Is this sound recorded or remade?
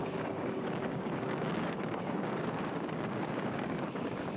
remade